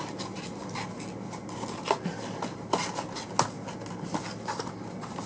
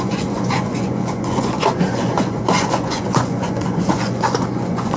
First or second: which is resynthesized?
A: second